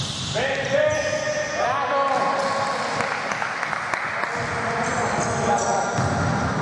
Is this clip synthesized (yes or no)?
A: yes